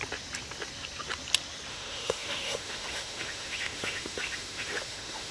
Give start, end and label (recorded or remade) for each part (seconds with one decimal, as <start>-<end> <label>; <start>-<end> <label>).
0.0-1.7 recorded; 1.7-5.3 remade